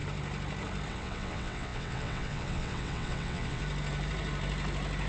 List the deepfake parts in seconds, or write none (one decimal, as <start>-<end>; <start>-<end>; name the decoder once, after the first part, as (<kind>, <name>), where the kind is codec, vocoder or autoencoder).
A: 0.9-3.6 (vocoder, WaveNeXt)